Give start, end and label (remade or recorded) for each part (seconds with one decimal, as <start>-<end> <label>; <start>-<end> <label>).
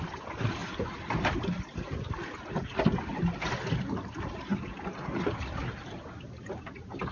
0.0-7.1 recorded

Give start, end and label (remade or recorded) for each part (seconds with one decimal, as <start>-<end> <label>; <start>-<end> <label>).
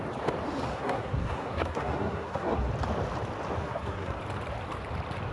0.0-0.7 recorded; 0.7-2.7 remade; 2.7-3.6 recorded; 3.6-4.2 remade; 4.2-5.3 recorded